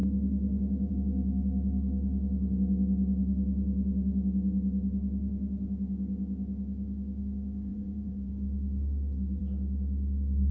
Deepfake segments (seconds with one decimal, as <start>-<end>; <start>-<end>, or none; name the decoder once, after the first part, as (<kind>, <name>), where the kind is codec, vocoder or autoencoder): 7.7-8.3 (vocoder, BigVGAN v2)